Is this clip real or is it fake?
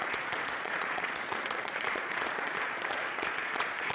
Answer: fake